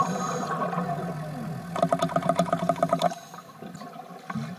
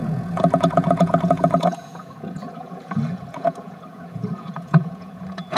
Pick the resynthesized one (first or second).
second